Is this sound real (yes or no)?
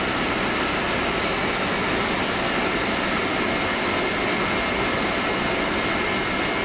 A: yes